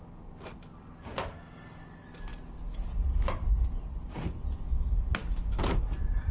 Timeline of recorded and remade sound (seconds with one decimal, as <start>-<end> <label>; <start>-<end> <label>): 0.0-6.3 recorded